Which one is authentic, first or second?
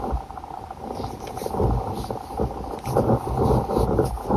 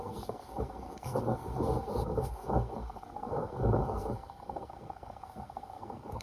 first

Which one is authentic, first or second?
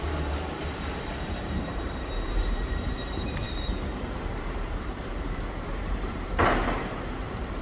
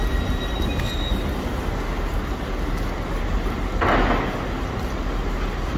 second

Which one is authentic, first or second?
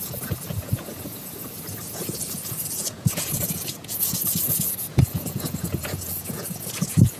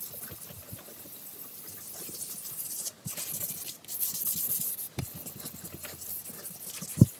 second